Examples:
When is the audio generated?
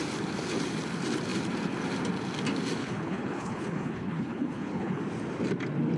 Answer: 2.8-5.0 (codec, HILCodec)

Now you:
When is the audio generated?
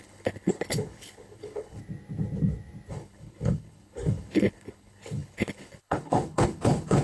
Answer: 0.0-1.8 (codec, HILCodec); 2.9-7.0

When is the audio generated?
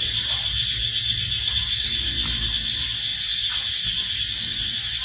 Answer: none